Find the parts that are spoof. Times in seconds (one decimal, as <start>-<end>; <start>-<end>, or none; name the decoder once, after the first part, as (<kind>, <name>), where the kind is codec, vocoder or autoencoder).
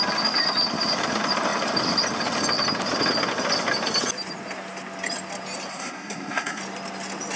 5.7-6.6 (codec, SNAC)